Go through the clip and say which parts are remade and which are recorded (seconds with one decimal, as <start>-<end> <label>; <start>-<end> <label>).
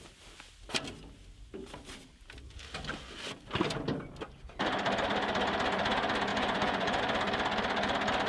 0.0-6.3 recorded; 6.3-7.0 remade; 7.0-8.3 recorded